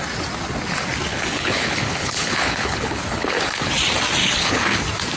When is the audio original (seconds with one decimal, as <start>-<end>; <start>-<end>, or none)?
0.0-1.1; 3.7-4.2; 4.8-5.2